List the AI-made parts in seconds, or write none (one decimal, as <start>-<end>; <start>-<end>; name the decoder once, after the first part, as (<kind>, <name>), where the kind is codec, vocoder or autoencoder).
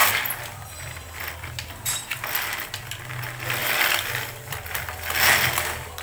0.0-1.3 (vocoder, BigVGAN v2); 3.6-5.0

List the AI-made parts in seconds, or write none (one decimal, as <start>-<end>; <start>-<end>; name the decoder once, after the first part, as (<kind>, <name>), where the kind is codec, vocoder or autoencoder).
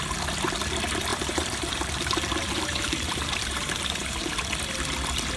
1.1-4.3 (vocoder, BigVGAN v2)